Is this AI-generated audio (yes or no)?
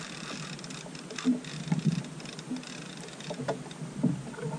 no